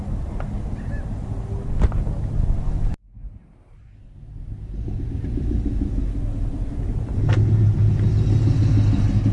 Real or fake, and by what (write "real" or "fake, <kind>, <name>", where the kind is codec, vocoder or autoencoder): real